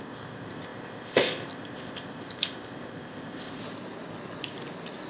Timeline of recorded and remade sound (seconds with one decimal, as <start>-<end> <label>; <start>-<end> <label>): 0.0-3.6 remade; 3.6-5.1 recorded